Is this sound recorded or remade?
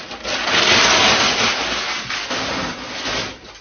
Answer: recorded